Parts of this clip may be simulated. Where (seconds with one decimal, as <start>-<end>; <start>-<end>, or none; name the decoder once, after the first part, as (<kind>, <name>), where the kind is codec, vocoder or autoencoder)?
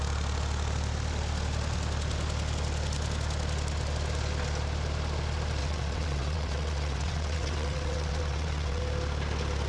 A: 5.6-8.8 (vocoder, WaveNeXt)